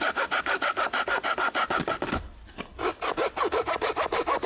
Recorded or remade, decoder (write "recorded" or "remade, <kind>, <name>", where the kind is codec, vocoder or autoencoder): recorded